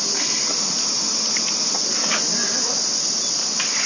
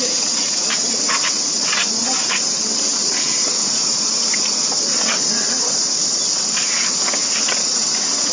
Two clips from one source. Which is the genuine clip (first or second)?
first